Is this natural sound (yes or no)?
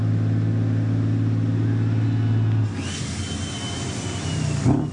yes